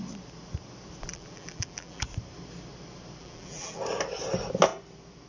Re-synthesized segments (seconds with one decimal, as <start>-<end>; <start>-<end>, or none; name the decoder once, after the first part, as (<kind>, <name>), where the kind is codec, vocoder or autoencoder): 1.1-2.0 (vocoder, BigVGAN v2); 3.2-3.8